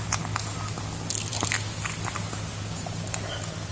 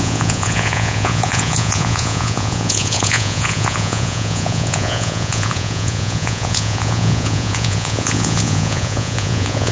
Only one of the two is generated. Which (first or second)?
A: second